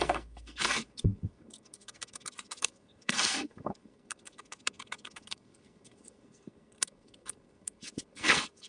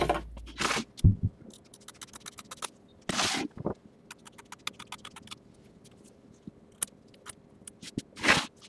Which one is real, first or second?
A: second